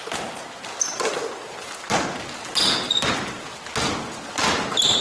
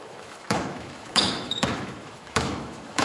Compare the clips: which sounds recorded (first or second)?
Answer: first